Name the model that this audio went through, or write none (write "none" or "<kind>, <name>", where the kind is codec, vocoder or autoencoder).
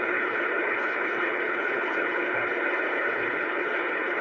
codec, HILCodec